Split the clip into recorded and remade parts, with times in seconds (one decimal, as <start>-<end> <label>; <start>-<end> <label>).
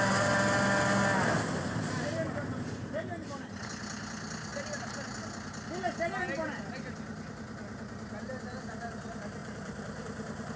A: 0.0-9.4 recorded; 9.4-10.6 remade